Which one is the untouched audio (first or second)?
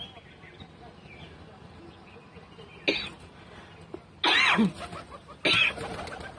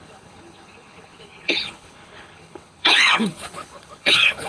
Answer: first